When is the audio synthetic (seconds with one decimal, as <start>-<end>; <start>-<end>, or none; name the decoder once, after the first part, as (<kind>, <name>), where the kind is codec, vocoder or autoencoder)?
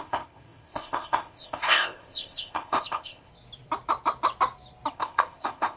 0.0-3.3 (codec, ZipCodec); 4.9-5.8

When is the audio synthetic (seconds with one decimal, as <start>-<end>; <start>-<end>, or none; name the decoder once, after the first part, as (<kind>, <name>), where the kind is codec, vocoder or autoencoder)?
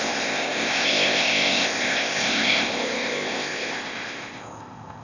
0.0-5.0 (codec, ZipCodec)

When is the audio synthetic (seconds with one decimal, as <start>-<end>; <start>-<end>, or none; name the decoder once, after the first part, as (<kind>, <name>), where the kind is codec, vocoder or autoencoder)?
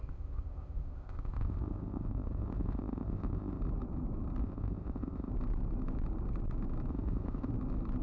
0.0-3.6 (codec, ZipCodec); 4.4-5.3; 6.9-7.5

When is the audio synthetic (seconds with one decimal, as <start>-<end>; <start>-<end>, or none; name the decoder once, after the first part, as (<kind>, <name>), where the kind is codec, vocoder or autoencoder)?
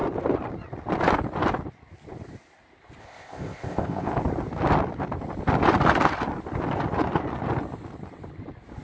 3.0-4.1 (codec, ZipCodec)